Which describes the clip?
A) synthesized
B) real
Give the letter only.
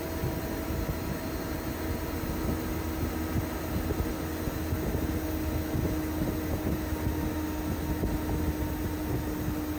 B